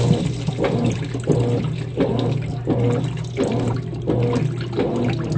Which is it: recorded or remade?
recorded